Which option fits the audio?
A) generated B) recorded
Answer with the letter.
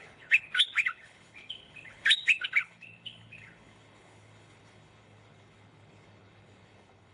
A